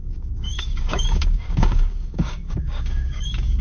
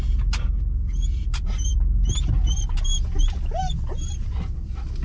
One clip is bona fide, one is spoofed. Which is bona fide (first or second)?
second